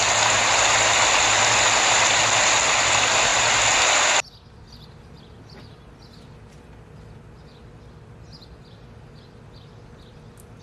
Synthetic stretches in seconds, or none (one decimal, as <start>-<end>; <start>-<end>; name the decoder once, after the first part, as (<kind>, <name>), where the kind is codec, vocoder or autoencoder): none